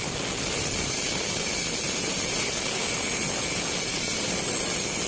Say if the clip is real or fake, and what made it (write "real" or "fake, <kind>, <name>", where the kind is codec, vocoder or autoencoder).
real